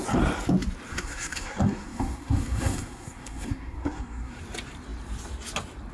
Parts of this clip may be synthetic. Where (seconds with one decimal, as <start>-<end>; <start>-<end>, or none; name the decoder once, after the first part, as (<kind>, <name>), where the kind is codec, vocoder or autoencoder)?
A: 0.9-4.4 (codec, SNAC)